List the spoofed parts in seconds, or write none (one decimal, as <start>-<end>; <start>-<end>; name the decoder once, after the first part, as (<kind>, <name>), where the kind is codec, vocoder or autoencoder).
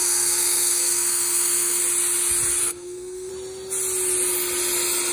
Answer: 0.0-1.8 (codec, SNAC); 2.6-3.3